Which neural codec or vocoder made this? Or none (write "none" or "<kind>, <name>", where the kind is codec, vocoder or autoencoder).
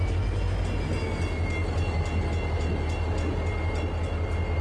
none